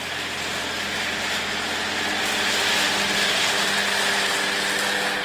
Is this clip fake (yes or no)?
no